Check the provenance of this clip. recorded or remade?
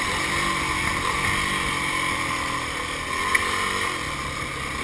recorded